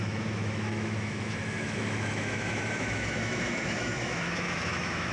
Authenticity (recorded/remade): remade